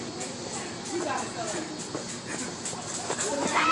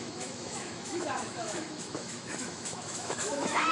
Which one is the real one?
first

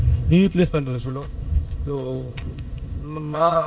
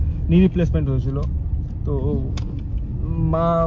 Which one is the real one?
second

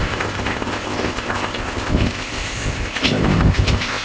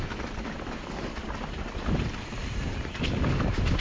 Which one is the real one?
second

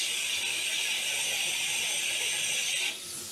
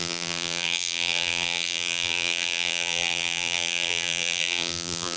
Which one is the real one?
first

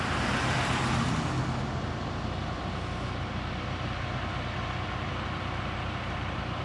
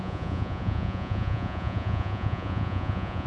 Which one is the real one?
first